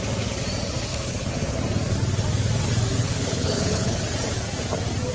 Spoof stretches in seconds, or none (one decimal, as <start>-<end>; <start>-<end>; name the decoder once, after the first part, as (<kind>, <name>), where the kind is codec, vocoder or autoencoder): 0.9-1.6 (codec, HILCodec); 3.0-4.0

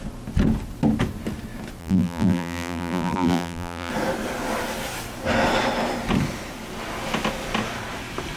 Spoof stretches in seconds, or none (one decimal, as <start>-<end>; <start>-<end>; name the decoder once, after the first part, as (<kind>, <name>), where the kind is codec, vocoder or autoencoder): 1.8-3.9 (vocoder, BigVGAN v2)

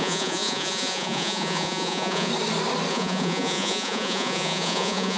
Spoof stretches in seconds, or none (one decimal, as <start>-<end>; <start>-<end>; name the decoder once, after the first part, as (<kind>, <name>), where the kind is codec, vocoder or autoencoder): 0.0-2.3 (vocoder, Vocos); 2.9-5.2